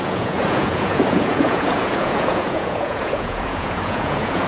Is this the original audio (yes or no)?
no